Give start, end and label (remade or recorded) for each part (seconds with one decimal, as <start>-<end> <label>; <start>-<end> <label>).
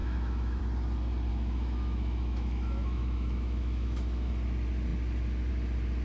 0.0-0.6 remade; 0.6-1.3 recorded; 1.3-4.3 remade; 4.3-6.0 recorded